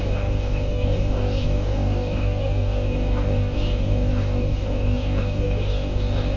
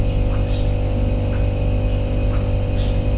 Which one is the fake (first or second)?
first